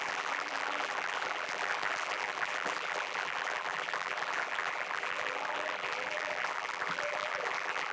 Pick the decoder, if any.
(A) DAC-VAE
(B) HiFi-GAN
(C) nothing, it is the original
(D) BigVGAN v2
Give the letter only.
D